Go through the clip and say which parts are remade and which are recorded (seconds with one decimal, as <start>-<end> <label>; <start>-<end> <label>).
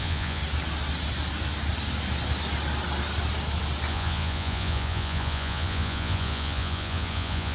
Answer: 0.0-0.4 remade; 0.4-3.9 recorded; 3.9-7.5 remade